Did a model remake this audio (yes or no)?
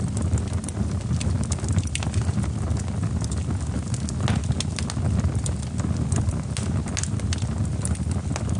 no